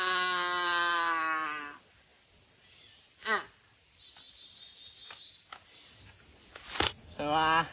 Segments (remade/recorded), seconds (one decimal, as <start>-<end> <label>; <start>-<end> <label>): 0.0-7.7 recorded